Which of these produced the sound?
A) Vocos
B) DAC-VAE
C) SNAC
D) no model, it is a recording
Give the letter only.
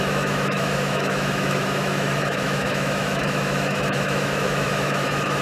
B